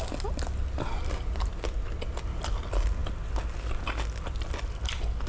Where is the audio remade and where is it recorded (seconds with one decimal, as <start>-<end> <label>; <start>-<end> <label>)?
0.0-5.3 recorded